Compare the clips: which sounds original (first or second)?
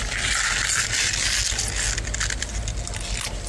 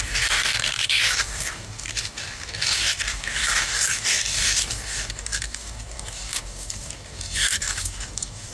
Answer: first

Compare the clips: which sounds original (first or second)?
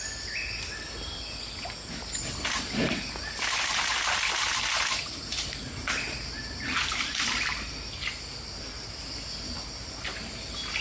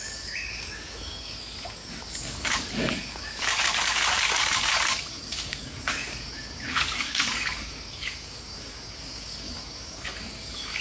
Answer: first